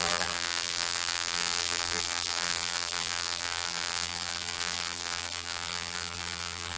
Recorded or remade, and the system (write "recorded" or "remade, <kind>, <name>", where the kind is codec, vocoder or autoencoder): remade, vocoder, BigVGAN v2